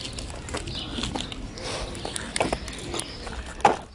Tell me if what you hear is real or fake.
real